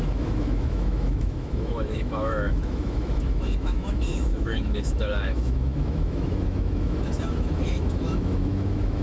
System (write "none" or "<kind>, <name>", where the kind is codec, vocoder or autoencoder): autoencoder, DAC-VAE